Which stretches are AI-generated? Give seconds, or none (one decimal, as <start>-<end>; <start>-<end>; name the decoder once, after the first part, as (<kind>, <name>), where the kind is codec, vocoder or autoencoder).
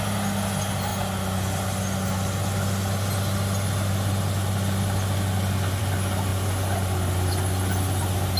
none